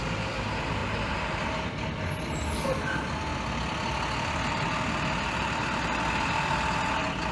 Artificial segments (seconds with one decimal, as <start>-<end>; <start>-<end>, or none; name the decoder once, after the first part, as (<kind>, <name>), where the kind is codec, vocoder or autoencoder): 0.8-1.7 (vocoder, BigVGAN v2)